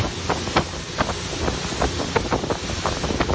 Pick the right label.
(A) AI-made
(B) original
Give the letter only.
B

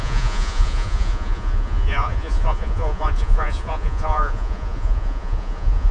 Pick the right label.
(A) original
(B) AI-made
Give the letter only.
B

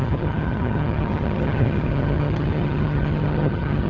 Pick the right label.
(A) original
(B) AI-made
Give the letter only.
B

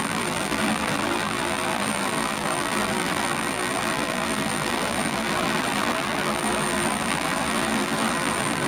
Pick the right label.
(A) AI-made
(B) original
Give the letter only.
A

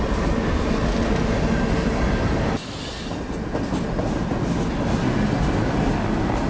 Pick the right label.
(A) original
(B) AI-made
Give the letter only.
A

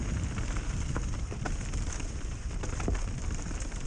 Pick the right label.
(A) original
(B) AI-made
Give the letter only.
A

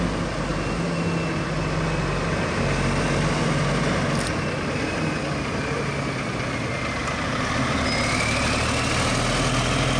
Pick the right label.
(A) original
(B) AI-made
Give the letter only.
A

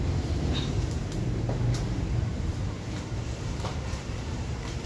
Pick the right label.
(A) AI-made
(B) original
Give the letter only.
A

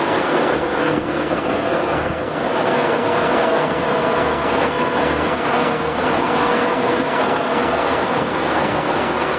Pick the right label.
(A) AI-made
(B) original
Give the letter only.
A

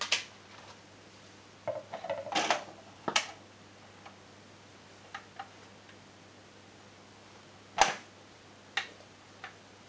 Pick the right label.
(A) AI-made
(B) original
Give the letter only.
B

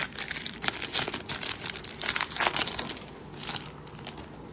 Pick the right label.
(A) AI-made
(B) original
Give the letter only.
B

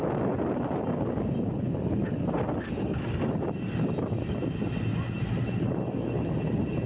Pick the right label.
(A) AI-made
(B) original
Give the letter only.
B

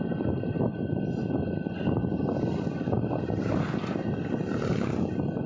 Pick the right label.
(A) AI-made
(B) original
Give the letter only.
B